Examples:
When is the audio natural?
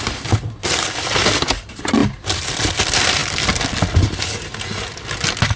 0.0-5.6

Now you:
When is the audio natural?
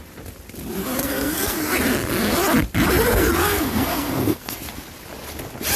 0.0-1.0; 1.8-3.1; 4.6-5.8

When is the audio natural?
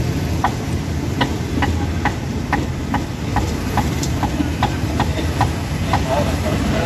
0.0-3.3; 4.3-5.1; 5.7-6.9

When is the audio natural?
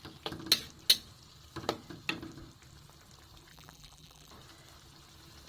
0.0-3.5; 4.3-5.5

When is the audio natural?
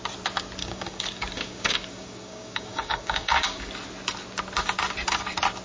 0.0-0.6; 3.7-5.6